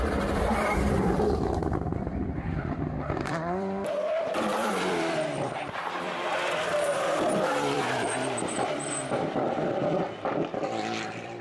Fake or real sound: fake